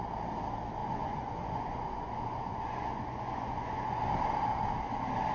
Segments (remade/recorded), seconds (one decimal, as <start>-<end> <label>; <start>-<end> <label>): 0.0-0.8 recorded; 0.8-4.0 remade; 4.0-5.3 recorded